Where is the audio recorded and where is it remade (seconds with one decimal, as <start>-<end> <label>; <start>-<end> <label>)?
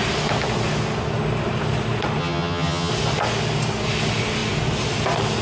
0.0-2.2 recorded; 2.2-2.9 remade; 2.9-5.4 recorded